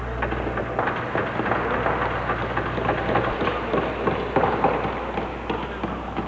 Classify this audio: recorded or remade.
recorded